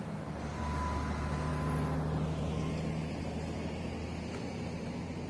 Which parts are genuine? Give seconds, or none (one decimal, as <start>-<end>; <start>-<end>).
0.0-5.3